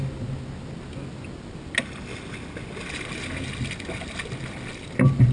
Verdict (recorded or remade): recorded